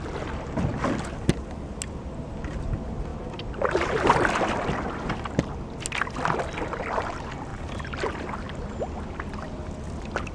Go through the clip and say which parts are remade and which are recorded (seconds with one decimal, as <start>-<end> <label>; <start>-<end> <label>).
0.0-3.1 recorded; 3.1-4.5 remade; 4.5-7.5 recorded; 7.5-8.4 remade; 8.4-10.3 recorded